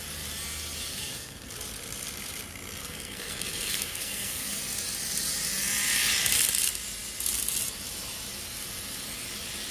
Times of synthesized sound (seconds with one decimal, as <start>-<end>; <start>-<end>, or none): 0.9-1.5; 2.8-4.6